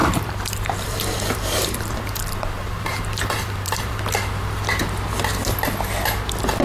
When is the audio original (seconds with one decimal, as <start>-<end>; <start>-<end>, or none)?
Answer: 4.0-6.6